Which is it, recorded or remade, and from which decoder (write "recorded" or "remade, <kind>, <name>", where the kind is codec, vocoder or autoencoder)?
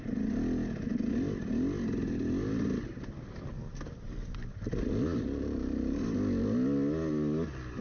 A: recorded